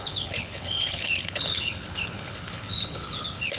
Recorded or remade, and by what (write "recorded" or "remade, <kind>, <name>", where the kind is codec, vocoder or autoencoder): remade, codec, HILCodec